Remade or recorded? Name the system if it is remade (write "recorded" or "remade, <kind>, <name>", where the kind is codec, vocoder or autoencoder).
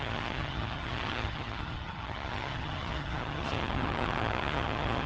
remade, vocoder, HiFi-GAN